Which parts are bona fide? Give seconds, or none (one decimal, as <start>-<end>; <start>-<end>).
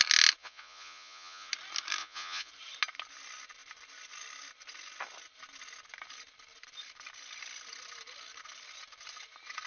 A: 0.0-0.4; 1.5-2.0; 2.5-9.7